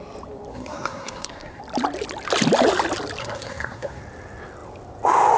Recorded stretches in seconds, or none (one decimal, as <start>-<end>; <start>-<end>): 0.0-0.5; 1.6-3.2; 4.0-5.4